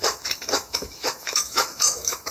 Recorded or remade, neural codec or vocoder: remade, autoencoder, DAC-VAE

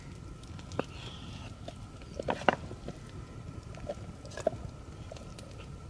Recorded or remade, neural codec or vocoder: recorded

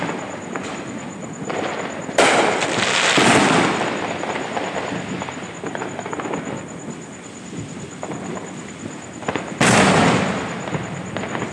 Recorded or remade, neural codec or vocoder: recorded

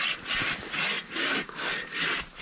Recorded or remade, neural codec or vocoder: recorded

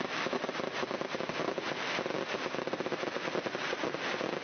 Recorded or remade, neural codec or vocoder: recorded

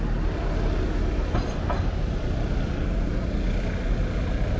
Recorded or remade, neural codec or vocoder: recorded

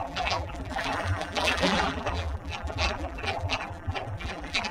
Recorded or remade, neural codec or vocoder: remade, vocoder, BigVGAN v2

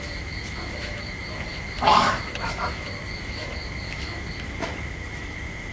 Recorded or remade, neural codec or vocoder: remade, autoencoder, DAC-VAE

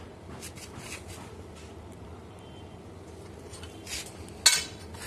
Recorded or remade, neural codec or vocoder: recorded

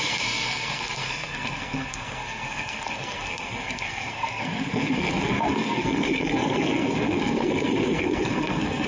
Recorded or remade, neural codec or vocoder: remade, codec, SNAC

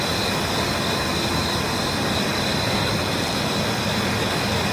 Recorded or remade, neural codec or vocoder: recorded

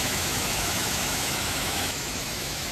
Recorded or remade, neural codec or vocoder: remade, autoencoder, DAC-VAE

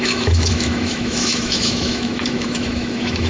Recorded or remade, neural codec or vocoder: remade, autoencoder, DAC-VAE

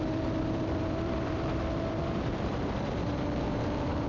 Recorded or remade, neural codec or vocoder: remade, vocoder, BigVGAN v2